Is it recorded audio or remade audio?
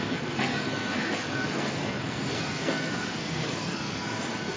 remade